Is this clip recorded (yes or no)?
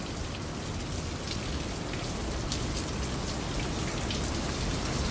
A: yes